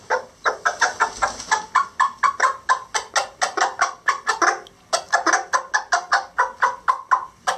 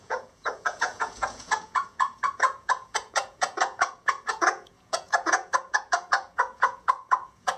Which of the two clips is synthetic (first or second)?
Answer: second